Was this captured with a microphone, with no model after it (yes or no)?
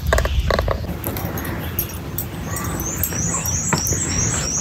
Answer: yes